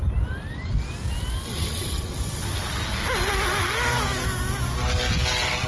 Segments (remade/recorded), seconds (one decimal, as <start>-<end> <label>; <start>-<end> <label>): 0.0-1.5 recorded; 1.5-2.2 remade; 2.2-5.7 recorded